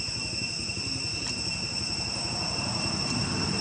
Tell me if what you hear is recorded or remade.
recorded